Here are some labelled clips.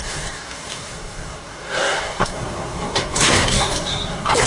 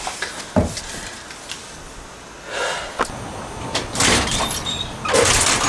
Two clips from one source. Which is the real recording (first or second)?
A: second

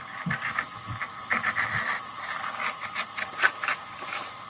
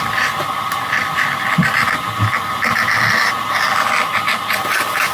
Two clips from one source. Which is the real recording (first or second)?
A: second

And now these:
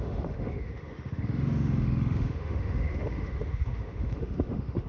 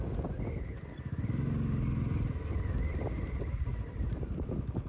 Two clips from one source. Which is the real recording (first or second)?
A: second